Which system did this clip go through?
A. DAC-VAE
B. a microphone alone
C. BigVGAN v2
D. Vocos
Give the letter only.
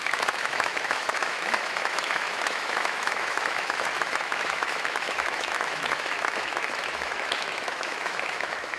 A